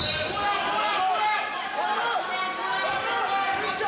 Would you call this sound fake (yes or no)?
no